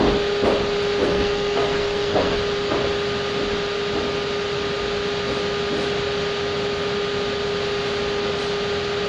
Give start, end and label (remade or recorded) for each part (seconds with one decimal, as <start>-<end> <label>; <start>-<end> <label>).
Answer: 0.0-1.0 recorded; 1.0-2.4 remade; 2.4-9.1 recorded